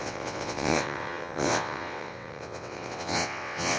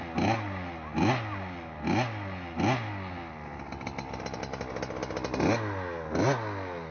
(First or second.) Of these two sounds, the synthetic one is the first